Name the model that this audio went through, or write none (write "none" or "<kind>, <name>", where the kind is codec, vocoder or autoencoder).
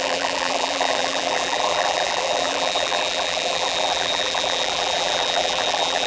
vocoder, BigVGAN v2